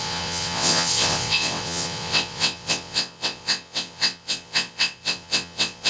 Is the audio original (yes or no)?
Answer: no